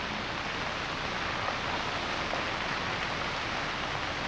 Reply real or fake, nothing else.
real